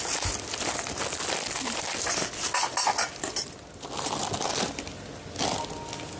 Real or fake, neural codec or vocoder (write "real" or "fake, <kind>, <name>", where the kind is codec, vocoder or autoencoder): real